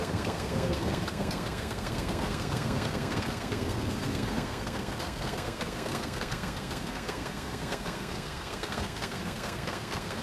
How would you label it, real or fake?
fake